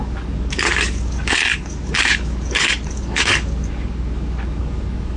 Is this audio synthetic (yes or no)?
yes